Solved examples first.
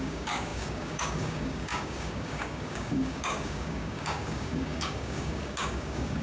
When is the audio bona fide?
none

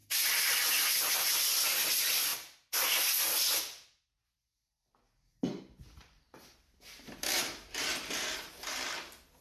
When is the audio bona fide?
0.0-1.1; 2.3-5.6

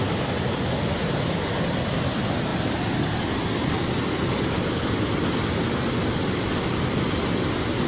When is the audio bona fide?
0.0-7.9

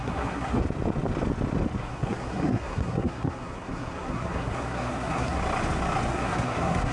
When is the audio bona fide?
0.6-1.8; 5.4-6.1

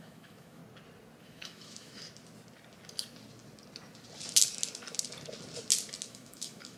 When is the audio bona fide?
0.6-1.2; 2.0-6.1

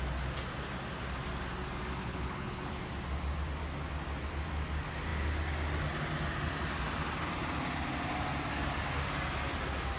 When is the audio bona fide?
0.0-2.0; 2.8-10.0

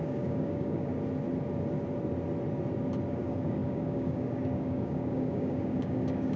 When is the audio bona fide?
0.9-3.1

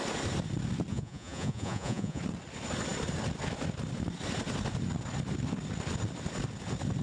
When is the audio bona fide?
0.0-0.9; 2.2-7.0